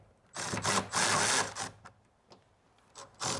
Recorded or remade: recorded